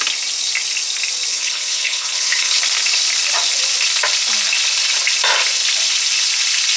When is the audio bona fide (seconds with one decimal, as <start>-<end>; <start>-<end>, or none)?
0.0-1.3; 2.6-6.8